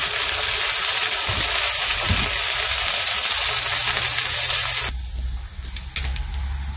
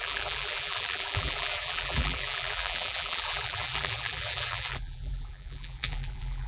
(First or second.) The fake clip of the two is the second